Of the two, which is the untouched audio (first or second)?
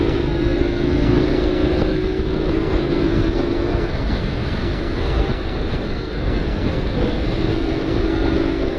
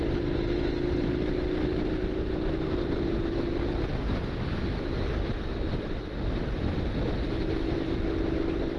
second